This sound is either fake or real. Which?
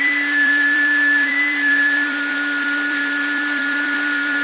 fake